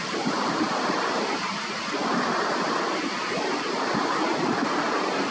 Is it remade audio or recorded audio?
recorded